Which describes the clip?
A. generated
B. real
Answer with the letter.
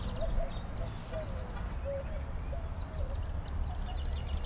B